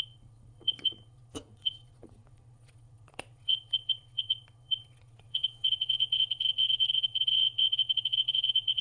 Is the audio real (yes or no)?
no